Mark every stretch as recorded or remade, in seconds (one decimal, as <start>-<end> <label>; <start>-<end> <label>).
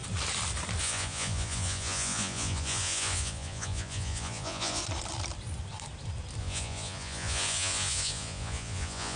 0.0-0.8 recorded; 0.8-4.8 remade; 4.8-6.4 recorded; 6.4-9.2 remade